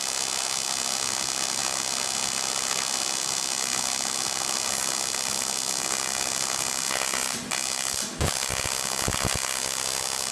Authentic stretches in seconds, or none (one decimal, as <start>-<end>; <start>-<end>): 0.0-10.3